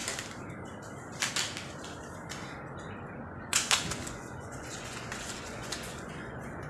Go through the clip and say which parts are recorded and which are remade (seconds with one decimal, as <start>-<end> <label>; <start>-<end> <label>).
0.0-3.2 recorded; 3.2-6.7 remade

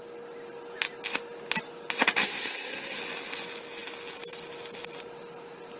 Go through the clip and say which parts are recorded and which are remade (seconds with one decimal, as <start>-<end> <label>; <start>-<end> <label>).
0.0-2.2 recorded; 2.2-3.0 remade; 3.0-5.8 recorded